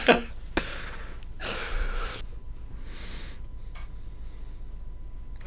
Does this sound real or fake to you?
real